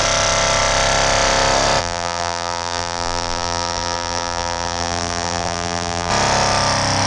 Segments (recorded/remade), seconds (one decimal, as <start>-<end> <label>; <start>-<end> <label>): 0.0-1.8 recorded; 1.8-6.1 remade; 6.1-7.1 recorded